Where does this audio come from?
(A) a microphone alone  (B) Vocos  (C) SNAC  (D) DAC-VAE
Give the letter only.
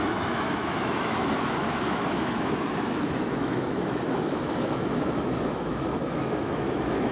D